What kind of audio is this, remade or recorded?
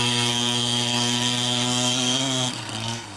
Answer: remade